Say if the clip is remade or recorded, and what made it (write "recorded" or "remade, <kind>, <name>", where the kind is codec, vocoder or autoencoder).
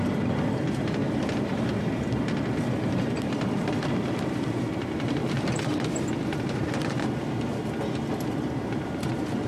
remade, vocoder, BigVGAN v2